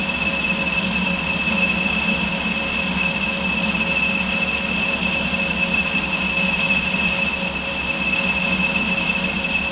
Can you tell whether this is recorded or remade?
recorded